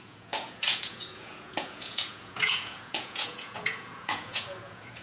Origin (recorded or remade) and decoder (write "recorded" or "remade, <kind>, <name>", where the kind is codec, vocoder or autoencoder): remade, vocoder, Vocos